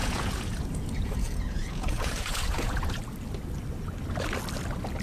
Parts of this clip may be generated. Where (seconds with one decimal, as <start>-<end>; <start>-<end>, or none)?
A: 0.0-3.0